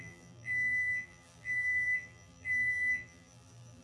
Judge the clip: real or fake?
fake